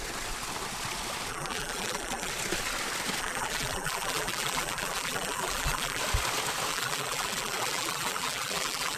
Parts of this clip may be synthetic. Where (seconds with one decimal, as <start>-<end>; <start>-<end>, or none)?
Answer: 1.3-2.3; 3.2-6.0; 6.7-9.0